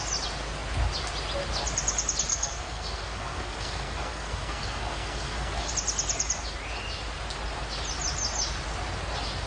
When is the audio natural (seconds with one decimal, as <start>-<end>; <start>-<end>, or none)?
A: 0.0-2.3; 5.7-9.5